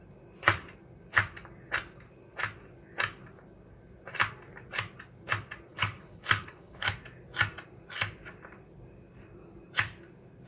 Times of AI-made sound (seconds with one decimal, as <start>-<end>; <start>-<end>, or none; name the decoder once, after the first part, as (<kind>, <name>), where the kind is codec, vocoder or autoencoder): 5.7-6.9 (codec, HILCodec)